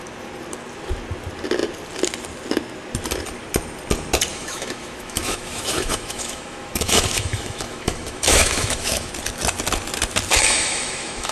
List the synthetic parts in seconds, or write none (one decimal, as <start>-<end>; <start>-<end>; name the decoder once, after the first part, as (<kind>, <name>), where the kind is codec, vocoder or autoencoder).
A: 4.3-9.1 (autoencoder, DAC-VAE); 10.3-11.3